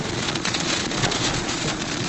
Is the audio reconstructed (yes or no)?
yes